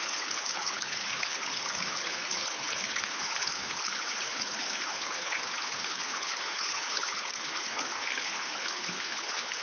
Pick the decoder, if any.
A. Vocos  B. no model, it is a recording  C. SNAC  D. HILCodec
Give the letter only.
D